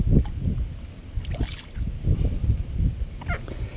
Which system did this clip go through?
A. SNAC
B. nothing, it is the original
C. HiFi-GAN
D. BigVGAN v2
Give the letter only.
B